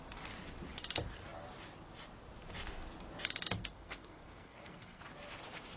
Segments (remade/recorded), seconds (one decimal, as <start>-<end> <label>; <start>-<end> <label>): 0.0-3.6 recorded; 3.6-5.0 remade; 5.0-5.8 recorded